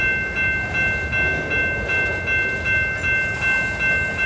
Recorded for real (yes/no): yes